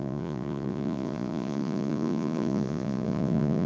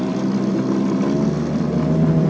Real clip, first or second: second